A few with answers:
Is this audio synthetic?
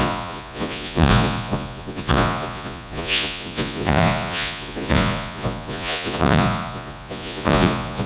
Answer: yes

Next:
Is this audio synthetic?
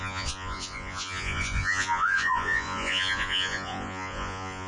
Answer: yes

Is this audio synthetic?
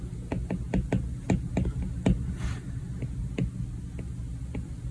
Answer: no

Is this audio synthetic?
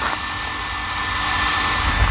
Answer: no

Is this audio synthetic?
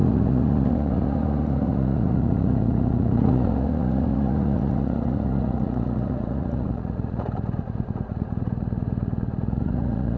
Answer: yes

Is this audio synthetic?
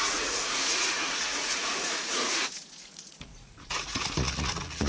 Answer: yes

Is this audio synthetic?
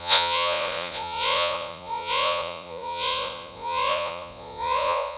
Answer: yes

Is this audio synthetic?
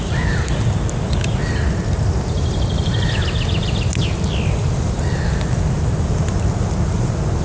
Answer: no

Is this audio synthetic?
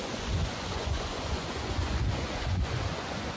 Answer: yes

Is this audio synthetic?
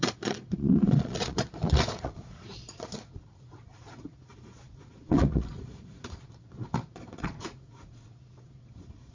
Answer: yes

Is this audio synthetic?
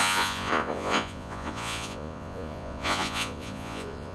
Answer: yes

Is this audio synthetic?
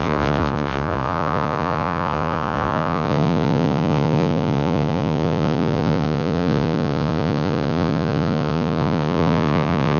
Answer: yes